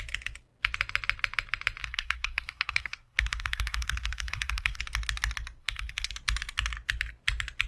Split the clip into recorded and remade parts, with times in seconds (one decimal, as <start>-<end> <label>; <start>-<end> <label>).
0.0-1.8 recorded; 1.8-4.8 remade; 4.8-5.6 recorded; 5.6-6.1 remade; 6.1-7.7 recorded

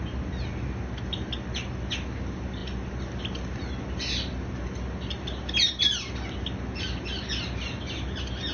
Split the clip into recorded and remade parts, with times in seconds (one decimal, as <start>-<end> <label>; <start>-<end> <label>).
0.0-8.5 recorded